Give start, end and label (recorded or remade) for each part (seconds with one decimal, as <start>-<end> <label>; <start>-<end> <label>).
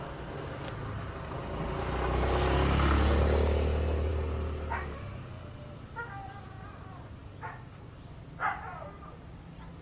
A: 0.0-9.8 recorded